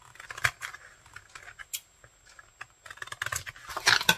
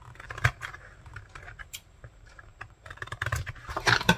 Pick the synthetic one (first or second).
second